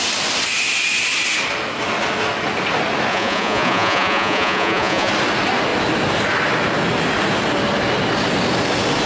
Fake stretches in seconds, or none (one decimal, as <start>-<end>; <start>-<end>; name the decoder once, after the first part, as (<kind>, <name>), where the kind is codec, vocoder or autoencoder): 3.1-5.1 (vocoder, Vocos)